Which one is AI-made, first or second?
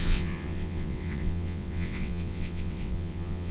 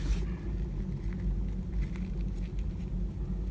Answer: first